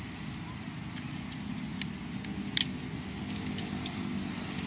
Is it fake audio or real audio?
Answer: real